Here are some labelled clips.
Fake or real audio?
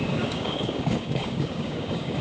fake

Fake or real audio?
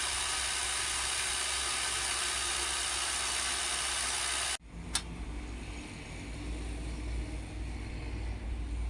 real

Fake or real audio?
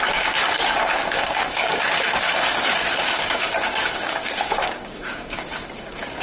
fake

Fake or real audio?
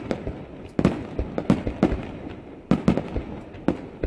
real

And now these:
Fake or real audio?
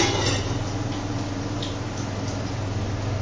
real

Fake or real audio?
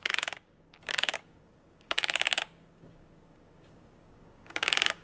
fake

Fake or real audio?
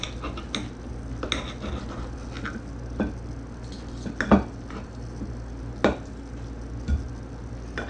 real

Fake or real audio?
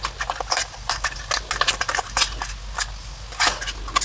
real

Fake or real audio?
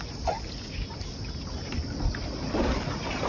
real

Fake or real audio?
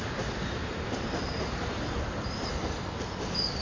real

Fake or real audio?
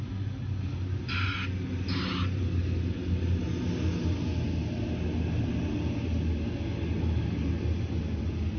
real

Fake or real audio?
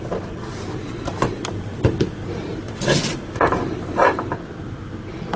real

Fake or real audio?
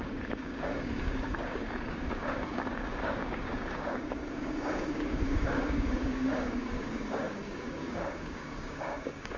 fake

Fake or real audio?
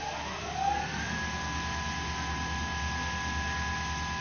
real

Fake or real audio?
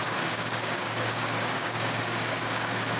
fake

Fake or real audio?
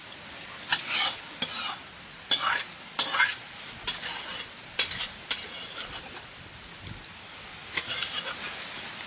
real